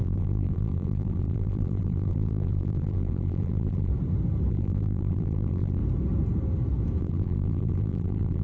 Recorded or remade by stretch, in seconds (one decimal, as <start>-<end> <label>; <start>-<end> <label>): 0.0-3.9 remade; 3.9-4.5 recorded; 4.5-5.8 remade; 5.8-7.0 recorded; 7.0-8.4 remade